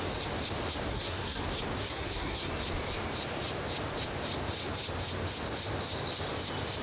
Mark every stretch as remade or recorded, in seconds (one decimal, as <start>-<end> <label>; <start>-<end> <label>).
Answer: 0.0-0.9 recorded; 0.9-1.4 remade; 1.4-1.8 recorded; 1.8-2.5 remade; 2.5-6.8 recorded